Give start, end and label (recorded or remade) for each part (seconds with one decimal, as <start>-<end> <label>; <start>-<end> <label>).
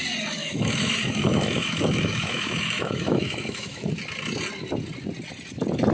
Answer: 0.0-0.4 recorded; 0.4-3.9 remade; 3.9-5.9 recorded